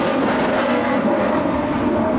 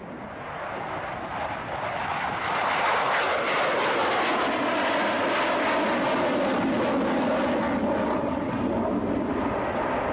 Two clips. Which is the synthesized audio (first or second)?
first